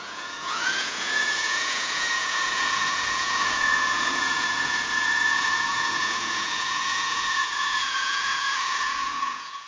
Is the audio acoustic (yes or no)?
no